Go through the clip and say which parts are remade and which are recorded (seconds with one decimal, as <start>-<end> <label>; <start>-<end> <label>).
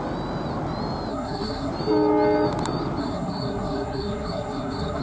0.0-1.1 recorded; 1.1-1.7 remade; 1.7-3.0 recorded; 3.0-5.0 remade